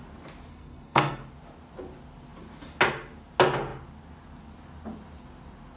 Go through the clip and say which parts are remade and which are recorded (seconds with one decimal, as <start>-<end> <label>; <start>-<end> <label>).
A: 0.0-0.5 recorded; 0.5-1.2 remade; 1.2-5.8 recorded